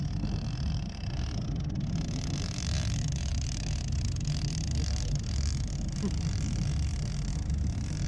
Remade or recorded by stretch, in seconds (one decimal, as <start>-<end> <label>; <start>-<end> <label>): 0.0-8.1 recorded